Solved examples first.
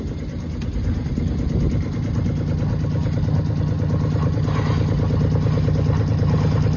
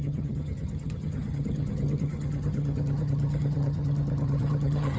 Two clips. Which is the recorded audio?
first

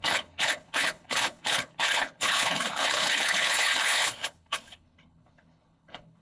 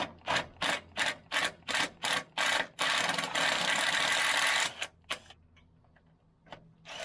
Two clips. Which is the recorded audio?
second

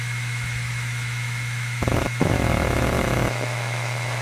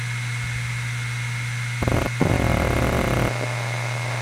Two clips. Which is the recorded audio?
second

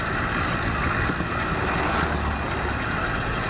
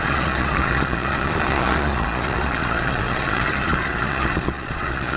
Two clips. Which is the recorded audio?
first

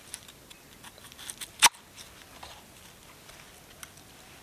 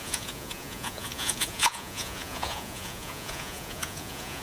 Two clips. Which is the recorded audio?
first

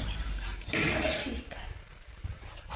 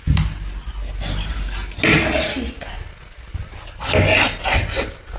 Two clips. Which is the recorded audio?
second